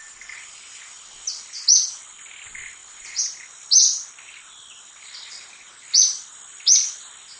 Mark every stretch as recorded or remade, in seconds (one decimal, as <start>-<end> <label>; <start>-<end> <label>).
0.0-2.8 recorded; 2.8-6.3 remade; 6.3-7.4 recorded